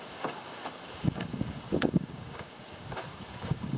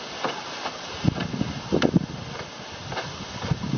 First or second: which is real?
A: second